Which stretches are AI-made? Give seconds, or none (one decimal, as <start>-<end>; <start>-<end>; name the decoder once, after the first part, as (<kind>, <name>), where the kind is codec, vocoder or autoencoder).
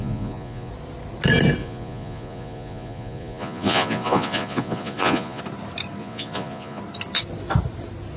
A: 0.0-0.7 (vocoder, Vocos); 1.6-5.4; 6.0-6.8